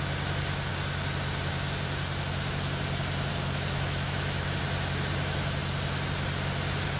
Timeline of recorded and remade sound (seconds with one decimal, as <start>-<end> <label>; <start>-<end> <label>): 0.0-3.3 recorded; 3.3-4.6 remade; 4.6-7.0 recorded